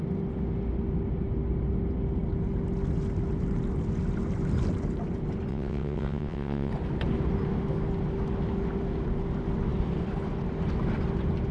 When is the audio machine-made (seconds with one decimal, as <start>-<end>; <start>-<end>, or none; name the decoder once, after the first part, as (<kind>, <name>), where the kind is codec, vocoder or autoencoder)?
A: 5.5-6.7 (vocoder, WaveNeXt)

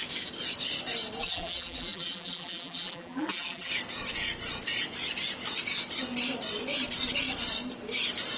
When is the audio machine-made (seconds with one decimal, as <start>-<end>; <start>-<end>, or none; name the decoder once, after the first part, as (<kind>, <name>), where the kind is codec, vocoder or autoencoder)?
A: 1.2-3.7 (vocoder, BigVGAN v2)